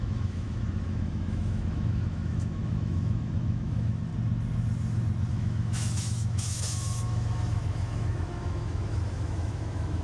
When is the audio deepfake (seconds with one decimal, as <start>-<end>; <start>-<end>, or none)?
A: 0.0-4.1; 5.3-10.0